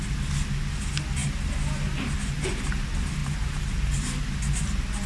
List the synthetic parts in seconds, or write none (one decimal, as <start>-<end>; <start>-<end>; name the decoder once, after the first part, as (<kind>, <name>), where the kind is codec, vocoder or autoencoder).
1.2-2.4 (vocoder, BigVGAN v2); 3.2-4.6